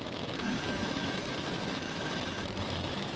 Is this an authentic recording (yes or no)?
no